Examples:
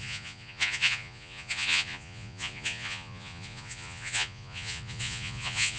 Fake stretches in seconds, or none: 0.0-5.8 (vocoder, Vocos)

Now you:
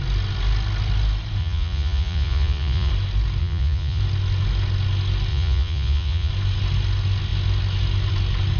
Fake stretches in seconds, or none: 1.4-2.9 (vocoder, Vocos); 3.4-4.0; 5.3-6.3

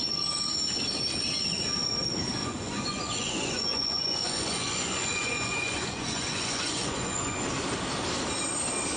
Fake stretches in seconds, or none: 2.4-7.4 (vocoder, Vocos)

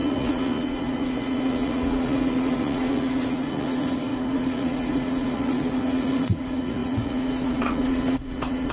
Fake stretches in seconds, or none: 0.0-8.7 (vocoder, Vocos)

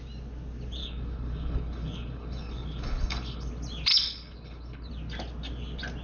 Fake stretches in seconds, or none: 0.8-3.5 (codec, HILCodec); 3.9-4.9

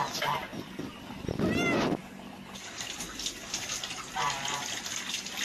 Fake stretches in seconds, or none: none